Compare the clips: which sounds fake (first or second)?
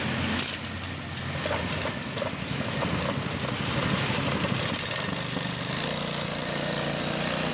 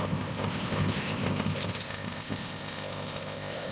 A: second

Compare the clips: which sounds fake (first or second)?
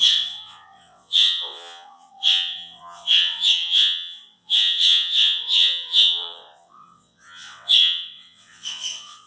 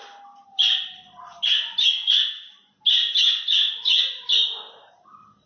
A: first